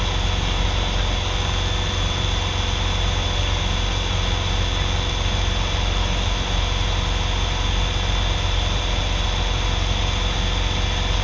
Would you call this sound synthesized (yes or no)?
no